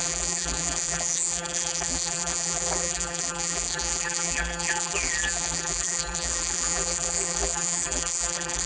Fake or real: fake